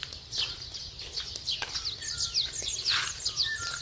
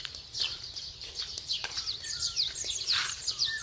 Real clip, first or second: first